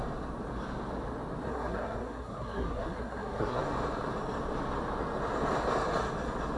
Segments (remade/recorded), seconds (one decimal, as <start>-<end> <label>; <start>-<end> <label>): 0.0-1.5 recorded; 1.5-3.6 remade; 3.6-6.6 recorded